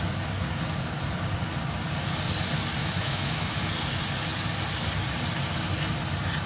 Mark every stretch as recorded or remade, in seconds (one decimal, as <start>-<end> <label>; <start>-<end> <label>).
0.0-2.8 recorded; 2.8-3.6 remade; 3.6-6.5 recorded